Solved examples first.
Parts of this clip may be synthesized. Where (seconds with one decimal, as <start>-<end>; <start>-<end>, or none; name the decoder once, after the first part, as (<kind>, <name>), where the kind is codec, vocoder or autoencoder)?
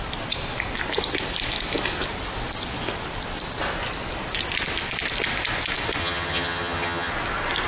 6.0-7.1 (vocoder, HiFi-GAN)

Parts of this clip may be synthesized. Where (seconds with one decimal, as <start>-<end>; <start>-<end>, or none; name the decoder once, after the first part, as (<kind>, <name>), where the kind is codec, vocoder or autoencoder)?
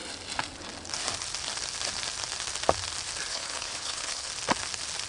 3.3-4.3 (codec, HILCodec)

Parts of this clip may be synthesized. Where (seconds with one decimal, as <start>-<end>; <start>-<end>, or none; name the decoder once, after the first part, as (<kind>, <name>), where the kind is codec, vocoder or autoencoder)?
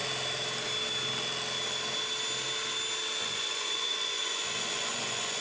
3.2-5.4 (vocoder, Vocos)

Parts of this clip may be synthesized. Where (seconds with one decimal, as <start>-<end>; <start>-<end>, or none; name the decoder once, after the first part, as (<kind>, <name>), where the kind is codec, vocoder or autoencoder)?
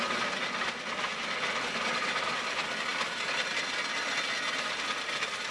none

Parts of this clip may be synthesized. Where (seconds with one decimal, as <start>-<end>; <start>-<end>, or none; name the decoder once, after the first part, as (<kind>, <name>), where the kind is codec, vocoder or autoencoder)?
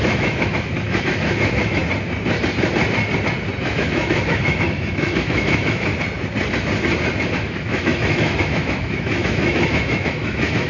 0.0-1.8 (autoencoder, DAC-VAE); 3.6-5.9; 7.3-10.7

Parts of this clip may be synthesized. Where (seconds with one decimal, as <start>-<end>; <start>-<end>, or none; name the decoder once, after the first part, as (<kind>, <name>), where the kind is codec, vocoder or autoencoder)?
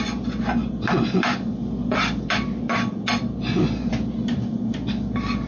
none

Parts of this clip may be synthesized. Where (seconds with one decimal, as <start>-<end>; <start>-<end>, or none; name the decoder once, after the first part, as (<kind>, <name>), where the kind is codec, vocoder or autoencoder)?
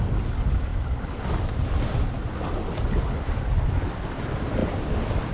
none